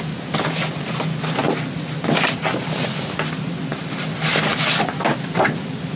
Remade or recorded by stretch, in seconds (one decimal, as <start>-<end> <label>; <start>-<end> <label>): 0.0-6.0 recorded